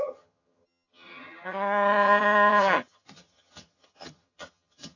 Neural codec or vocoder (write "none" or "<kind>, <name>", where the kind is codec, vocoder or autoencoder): vocoder, HiFi-GAN